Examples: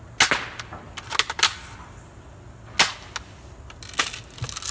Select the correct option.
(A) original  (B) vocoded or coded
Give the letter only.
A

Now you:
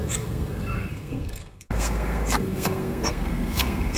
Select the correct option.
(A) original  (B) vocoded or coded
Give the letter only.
B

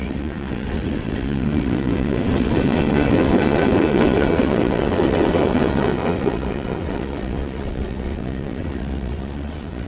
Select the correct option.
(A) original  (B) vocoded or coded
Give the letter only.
B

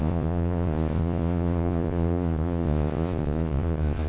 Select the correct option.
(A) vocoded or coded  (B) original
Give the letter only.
A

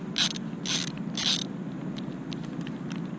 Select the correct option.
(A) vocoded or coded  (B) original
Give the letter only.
B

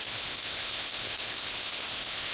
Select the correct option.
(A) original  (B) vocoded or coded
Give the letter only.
B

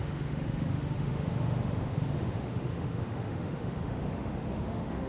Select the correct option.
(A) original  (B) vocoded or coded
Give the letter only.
B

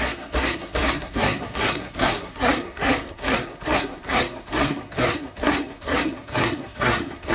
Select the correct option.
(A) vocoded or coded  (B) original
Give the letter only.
A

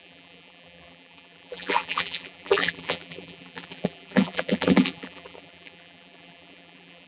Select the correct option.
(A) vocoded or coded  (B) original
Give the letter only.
A